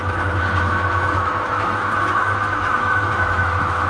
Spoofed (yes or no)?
yes